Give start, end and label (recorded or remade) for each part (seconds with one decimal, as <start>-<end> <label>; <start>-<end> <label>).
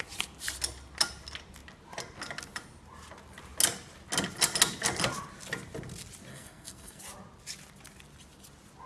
0.0-6.3 recorded; 6.3-7.0 remade; 7.0-8.9 recorded